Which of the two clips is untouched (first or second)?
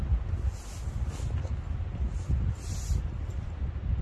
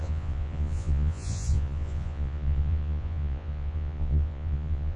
first